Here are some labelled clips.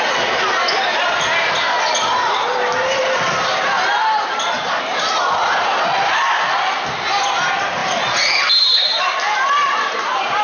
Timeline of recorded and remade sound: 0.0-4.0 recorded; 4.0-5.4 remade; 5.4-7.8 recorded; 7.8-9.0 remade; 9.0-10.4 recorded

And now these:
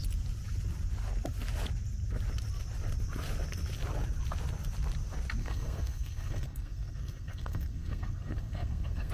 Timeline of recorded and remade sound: 0.0-5.4 recorded; 5.4-9.1 remade

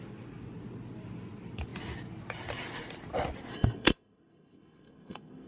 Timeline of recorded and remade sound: 0.0-3.5 recorded; 3.5-5.5 remade

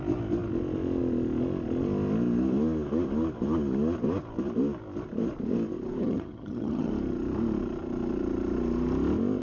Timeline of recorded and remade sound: 0.0-6.0 recorded; 6.0-6.9 remade; 6.9-9.4 recorded